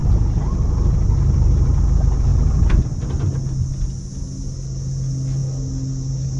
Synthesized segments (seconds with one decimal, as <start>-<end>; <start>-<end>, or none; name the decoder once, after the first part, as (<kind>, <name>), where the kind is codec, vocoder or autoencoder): 0.0-1.8 (vocoder, BigVGAN v2)